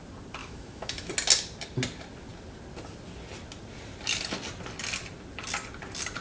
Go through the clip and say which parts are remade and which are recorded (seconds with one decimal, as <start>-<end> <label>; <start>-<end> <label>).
0.0-0.4 recorded; 0.4-1.1 remade; 1.1-6.2 recorded